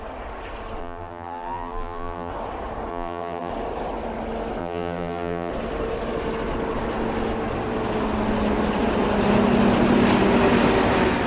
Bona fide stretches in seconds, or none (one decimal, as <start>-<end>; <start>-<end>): 0.0-0.8; 2.3-2.9; 3.5-4.6; 5.5-11.3